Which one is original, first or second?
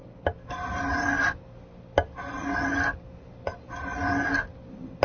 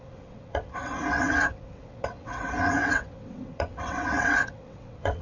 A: first